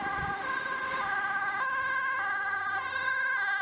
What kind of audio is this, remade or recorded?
recorded